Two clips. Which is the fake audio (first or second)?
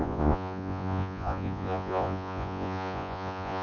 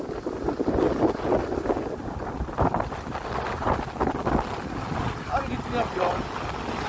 first